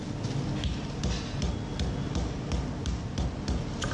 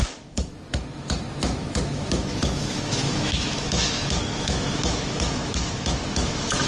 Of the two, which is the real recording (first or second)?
first